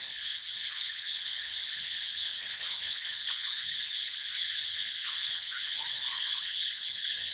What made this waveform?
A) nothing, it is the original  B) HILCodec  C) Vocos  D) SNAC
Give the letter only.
B